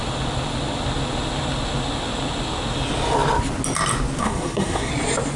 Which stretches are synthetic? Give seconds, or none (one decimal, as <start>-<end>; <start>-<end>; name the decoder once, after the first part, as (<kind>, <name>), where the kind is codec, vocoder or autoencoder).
4.2-4.9 (codec, SNAC)